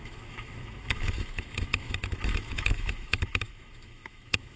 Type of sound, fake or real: fake